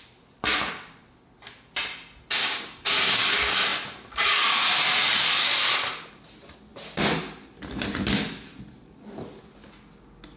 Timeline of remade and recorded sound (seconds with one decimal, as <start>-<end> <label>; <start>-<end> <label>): 0.0-2.4 recorded; 2.4-3.3 remade; 3.3-10.4 recorded